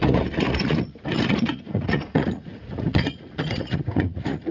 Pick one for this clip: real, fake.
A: fake